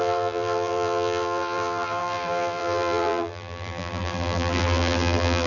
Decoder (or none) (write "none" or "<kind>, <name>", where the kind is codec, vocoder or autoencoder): vocoder, BigVGAN v2